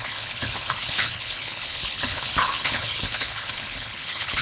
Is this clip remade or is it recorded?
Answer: remade